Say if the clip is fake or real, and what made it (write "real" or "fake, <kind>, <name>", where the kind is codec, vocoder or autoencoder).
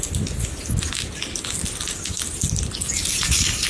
real